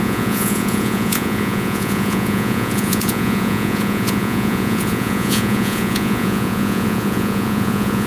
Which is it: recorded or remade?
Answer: remade